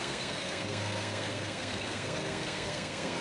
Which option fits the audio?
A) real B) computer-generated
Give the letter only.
B